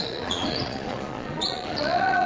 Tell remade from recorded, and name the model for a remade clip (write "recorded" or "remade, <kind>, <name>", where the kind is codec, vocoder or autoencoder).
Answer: remade, vocoder, Vocos